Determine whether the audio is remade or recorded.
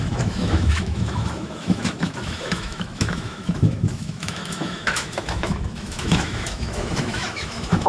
remade